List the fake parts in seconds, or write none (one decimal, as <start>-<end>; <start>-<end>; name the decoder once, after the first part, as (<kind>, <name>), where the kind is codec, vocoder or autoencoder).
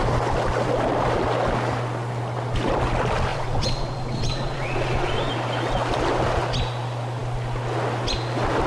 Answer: 3.3-5.3 (vocoder, Vocos)